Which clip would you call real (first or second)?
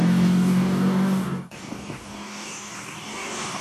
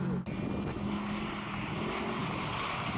second